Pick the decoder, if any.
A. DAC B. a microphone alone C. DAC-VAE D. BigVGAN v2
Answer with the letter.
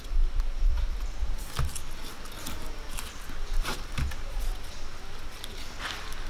B